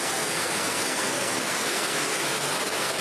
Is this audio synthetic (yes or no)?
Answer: yes